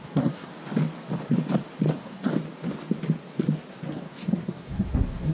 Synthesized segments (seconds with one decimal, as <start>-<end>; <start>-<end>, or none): 0.0-0.5; 1.9-2.3; 3.7-5.3